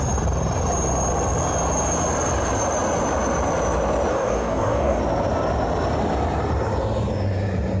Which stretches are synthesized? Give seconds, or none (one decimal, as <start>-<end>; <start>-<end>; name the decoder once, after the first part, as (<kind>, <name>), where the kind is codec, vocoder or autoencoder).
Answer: 4.1-5.0 (codec, DAC)